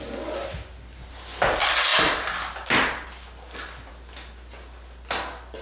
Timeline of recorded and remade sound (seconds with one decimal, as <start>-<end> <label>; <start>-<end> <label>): 0.0-5.6 recorded